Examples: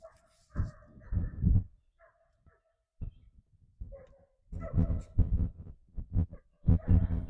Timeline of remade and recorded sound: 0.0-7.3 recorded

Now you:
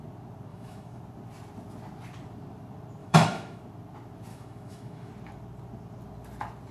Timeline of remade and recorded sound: 0.0-0.5 recorded; 0.5-1.0 remade; 1.0-3.0 recorded; 3.0-3.6 remade; 3.6-4.3 recorded; 4.3-5.1 remade; 5.1-6.7 recorded

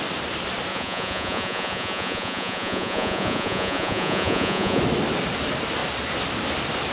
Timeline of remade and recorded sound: 0.0-0.7 recorded; 0.7-4.8 remade; 4.8-6.9 recorded